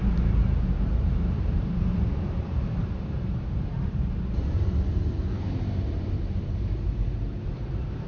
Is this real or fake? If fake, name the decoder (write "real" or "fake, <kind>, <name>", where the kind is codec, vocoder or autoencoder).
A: fake, vocoder, BigVGAN v2